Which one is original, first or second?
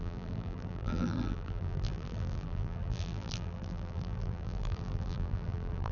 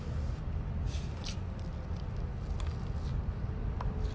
second